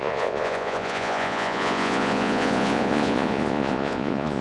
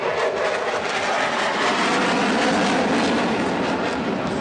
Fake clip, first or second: first